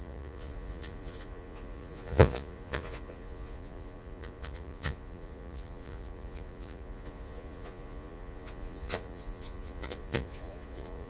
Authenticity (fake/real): fake